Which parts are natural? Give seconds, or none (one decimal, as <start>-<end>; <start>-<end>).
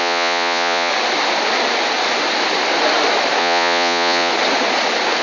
0.9-3.4; 4.3-5.2